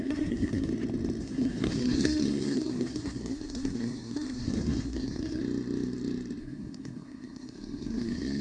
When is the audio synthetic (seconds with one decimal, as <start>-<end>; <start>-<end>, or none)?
0.0-0.7; 1.2-5.4; 6.4-8.4